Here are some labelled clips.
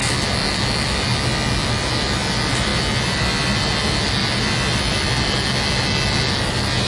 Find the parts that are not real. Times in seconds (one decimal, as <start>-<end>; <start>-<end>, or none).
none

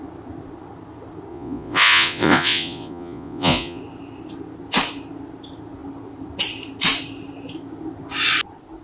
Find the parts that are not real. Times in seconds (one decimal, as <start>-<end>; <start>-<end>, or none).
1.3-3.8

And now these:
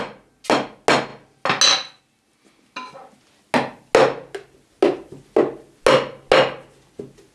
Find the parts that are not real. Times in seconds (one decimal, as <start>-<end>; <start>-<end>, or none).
none

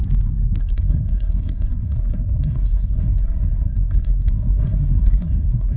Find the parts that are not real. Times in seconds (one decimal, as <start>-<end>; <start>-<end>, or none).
0.6-5.8

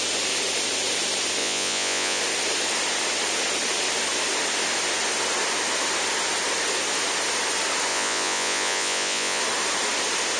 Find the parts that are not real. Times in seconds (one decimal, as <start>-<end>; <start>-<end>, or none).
1.4-2.2; 7.9-9.4

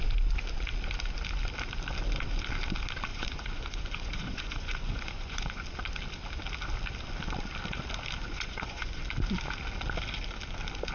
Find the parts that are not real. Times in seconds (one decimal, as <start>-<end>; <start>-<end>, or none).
3.1-5.6; 8.2-9.0

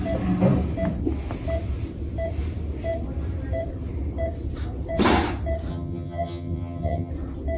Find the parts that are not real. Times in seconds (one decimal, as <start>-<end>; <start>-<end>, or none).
5.7-7.1

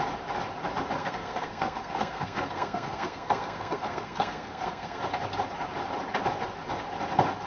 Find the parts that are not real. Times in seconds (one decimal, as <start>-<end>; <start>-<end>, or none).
1.0-5.0